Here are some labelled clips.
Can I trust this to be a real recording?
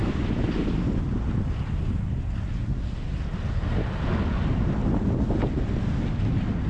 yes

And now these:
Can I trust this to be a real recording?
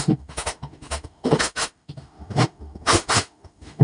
no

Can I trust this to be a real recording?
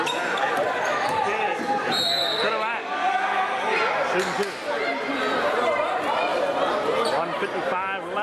yes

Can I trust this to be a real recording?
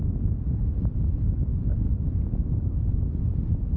yes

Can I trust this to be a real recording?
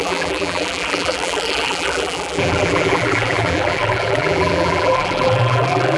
no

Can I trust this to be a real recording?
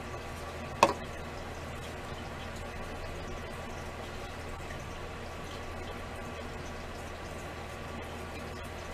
yes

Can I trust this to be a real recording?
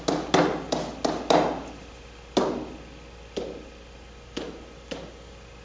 yes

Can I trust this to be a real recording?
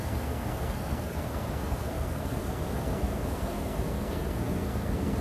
no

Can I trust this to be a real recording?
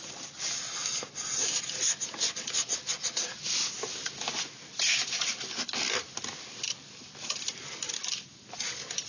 yes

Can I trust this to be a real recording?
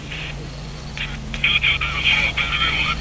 no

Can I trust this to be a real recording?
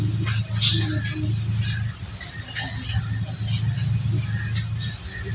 yes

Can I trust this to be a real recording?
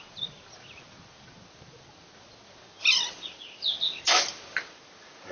yes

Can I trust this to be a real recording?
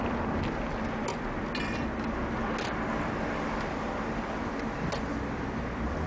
yes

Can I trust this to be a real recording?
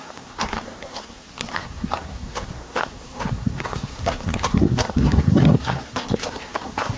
no